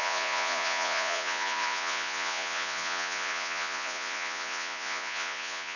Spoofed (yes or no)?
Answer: yes